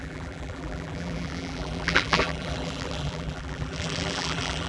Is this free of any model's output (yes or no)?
no